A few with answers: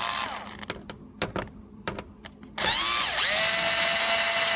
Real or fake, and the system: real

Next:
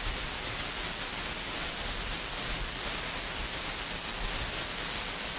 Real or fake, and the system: real